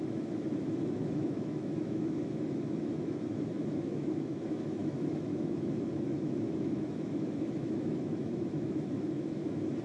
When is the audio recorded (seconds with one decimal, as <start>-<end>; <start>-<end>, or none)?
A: none